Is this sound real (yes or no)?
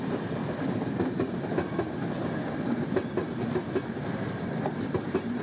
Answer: yes